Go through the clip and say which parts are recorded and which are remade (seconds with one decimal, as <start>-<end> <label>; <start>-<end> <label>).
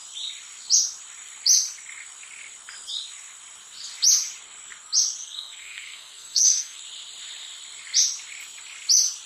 0.0-5.2 recorded; 5.2-6.8 remade; 6.8-9.3 recorded